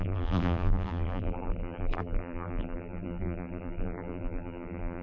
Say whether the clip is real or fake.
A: fake